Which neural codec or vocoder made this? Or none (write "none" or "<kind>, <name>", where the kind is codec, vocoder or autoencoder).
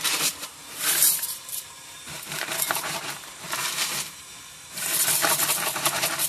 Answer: vocoder, BigVGAN v2